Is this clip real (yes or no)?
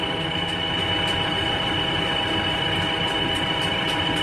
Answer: yes